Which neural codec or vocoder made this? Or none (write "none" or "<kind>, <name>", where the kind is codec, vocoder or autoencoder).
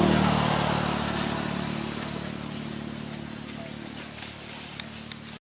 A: none